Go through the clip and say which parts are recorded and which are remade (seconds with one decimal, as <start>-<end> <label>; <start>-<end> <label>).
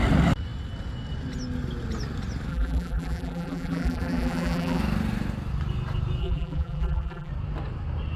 0.0-2.5 recorded; 2.5-4.8 remade; 4.8-6.2 recorded; 6.2-7.3 remade; 7.3-8.2 recorded